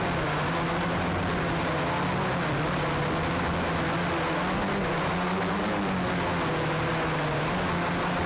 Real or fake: real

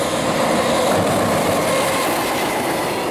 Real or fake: real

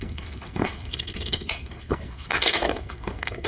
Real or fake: fake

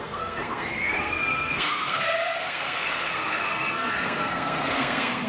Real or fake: fake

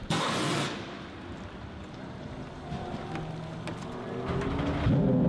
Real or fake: real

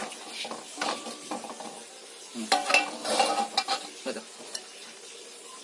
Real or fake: real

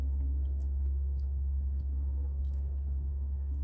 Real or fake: fake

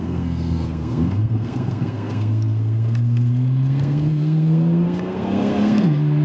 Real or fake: fake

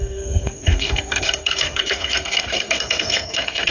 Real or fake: fake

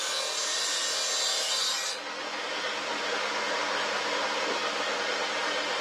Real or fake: real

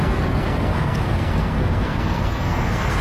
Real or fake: fake